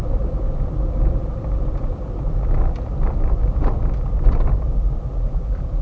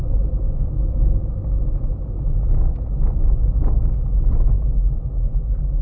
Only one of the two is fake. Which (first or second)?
first